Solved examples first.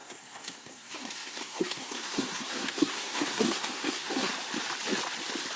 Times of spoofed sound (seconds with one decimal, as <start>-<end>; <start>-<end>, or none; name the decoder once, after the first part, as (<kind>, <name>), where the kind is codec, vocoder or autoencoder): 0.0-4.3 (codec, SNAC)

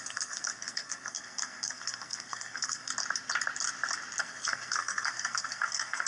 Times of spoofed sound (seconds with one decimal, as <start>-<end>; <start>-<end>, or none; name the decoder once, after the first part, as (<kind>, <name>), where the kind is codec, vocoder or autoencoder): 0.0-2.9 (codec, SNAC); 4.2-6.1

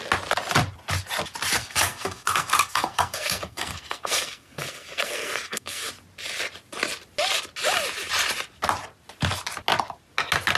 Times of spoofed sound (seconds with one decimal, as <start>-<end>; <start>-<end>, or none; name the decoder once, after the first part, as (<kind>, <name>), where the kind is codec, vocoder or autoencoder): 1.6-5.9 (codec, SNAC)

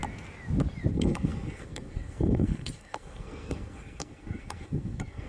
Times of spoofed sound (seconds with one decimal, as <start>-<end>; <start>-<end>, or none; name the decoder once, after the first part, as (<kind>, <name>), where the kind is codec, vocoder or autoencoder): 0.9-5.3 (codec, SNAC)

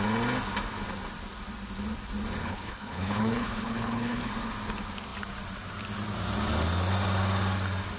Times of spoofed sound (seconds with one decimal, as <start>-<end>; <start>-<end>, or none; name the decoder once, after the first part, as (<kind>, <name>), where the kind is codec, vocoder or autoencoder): 2.4-4.3 (codec, HILCodec)